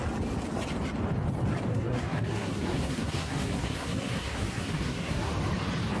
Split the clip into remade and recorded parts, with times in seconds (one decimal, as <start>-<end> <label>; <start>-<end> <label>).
0.0-1.7 recorded; 1.7-5.3 remade; 5.3-6.0 recorded